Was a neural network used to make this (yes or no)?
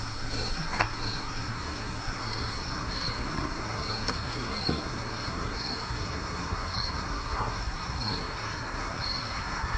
yes